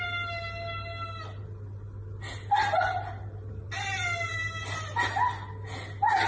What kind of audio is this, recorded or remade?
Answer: recorded